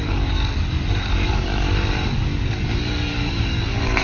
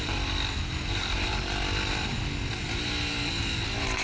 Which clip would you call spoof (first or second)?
first